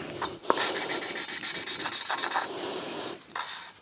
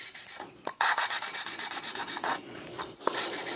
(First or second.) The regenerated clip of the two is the second